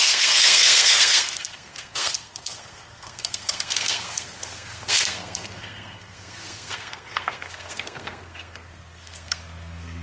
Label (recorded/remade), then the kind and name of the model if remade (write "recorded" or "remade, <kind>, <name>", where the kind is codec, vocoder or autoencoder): remade, codec, SNAC